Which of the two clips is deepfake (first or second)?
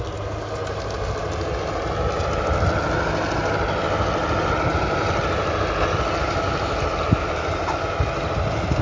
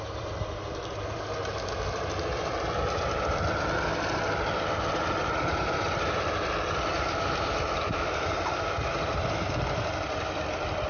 second